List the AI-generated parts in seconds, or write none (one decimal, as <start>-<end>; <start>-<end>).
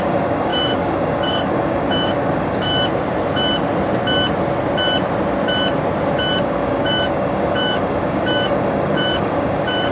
0.0-2.7; 6.4-9.9